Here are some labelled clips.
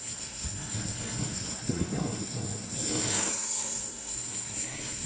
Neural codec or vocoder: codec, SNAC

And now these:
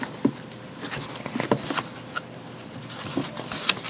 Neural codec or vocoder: none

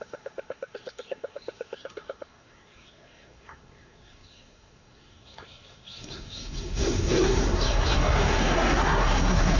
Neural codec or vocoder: codec, SNAC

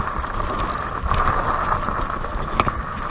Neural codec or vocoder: none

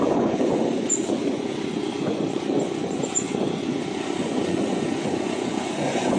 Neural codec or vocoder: vocoder, Vocos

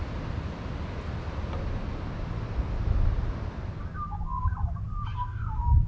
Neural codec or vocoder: none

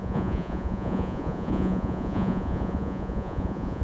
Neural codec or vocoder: vocoder, Vocos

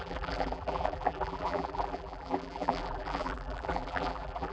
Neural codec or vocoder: vocoder, BigVGAN v2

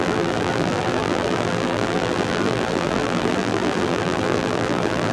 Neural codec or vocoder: vocoder, BigVGAN v2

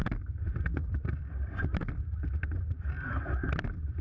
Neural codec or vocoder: vocoder, BigVGAN v2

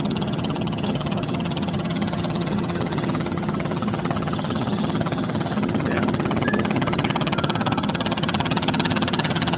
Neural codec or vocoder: vocoder, HiFi-GAN